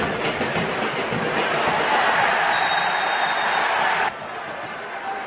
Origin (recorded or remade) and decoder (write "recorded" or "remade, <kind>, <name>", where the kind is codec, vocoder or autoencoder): recorded